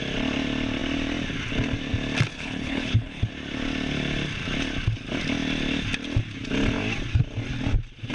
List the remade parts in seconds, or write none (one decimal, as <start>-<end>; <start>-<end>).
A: 2.3-3.3